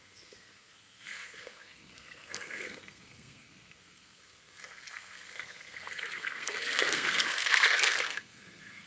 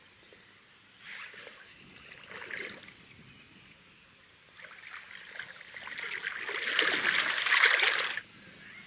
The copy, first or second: first